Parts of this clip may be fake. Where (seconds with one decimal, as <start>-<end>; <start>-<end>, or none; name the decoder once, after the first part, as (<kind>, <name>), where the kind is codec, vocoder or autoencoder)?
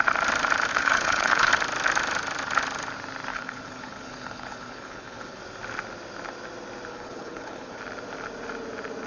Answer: 0.7-1.5 (codec, HILCodec); 3.3-5.4; 6.9-7.8